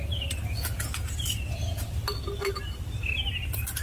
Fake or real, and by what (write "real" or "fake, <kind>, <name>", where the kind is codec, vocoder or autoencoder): real